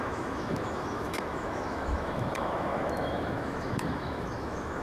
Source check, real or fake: fake